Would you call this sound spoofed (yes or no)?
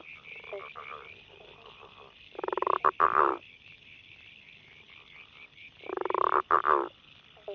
no